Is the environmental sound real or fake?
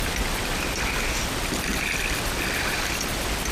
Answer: real